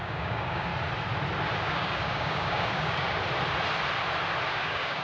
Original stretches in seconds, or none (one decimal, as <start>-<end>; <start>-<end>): 0.7-1.6; 3.2-4.5